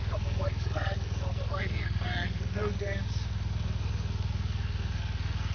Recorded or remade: remade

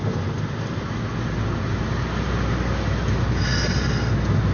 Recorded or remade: recorded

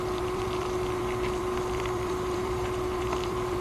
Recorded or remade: remade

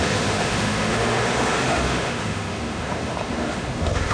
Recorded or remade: remade